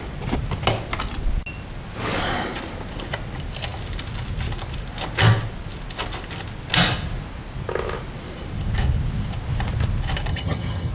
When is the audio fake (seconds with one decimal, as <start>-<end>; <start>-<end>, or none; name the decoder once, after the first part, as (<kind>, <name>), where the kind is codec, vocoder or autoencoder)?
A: 10.3-10.9 (vocoder, HiFi-GAN)